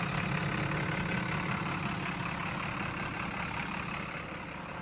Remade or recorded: recorded